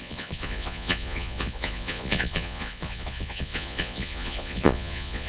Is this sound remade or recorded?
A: remade